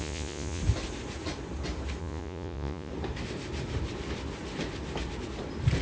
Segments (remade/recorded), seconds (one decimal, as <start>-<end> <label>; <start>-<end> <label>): 0.0-0.6 remade; 0.6-2.0 recorded; 2.0-2.9 remade; 2.9-5.8 recorded